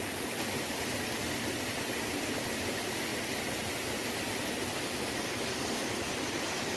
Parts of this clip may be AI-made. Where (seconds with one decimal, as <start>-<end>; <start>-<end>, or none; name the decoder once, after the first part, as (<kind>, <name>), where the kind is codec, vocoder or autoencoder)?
none